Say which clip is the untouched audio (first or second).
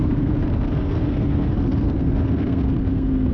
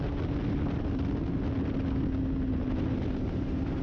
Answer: second